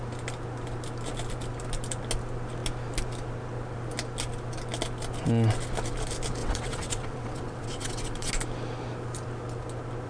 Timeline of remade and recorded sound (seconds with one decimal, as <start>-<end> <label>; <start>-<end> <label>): 0.0-6.4 recorded; 6.4-8.3 remade; 8.3-10.1 recorded